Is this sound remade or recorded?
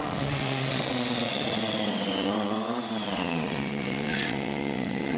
remade